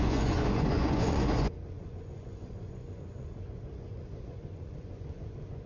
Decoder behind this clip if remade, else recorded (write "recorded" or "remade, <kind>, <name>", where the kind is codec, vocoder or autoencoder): remade, vocoder, Vocos